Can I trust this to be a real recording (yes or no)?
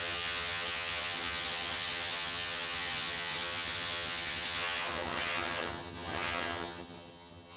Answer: no